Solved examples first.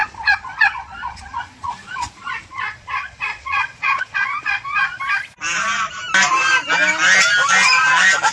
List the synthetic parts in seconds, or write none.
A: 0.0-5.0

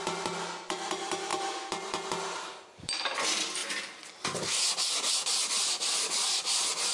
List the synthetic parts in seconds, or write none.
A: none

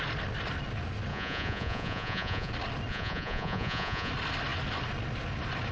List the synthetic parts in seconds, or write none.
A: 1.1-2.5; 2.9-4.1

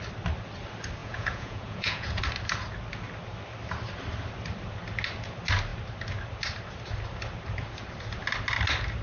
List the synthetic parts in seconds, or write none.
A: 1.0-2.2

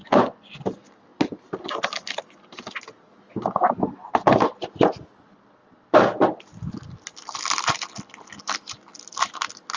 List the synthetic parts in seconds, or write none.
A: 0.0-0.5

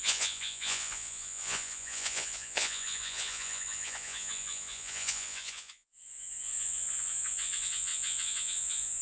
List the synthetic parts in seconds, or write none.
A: 0.0-9.0